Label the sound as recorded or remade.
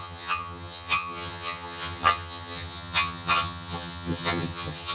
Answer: remade